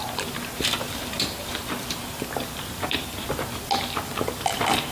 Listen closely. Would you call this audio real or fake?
real